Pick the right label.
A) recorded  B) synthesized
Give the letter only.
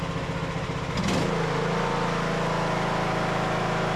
A